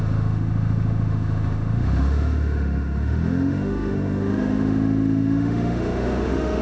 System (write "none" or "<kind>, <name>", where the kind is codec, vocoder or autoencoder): autoencoder, DAC-VAE